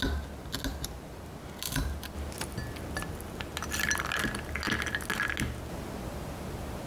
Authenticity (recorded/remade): recorded